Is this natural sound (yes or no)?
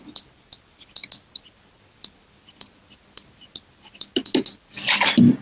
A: yes